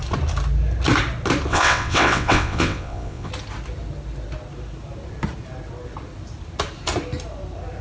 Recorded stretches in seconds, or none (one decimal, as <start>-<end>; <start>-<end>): 0.0-1.5; 3.3-7.8

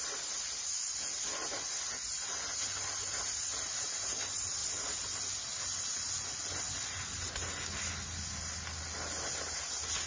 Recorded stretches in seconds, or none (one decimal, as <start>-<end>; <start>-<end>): 0.0-10.1

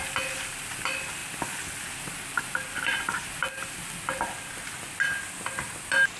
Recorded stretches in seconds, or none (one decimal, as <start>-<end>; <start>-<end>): 0.0-6.2

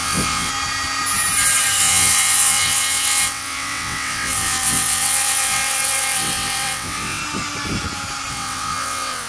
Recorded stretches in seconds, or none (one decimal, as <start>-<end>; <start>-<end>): 0.5-1.8; 7.2-8.3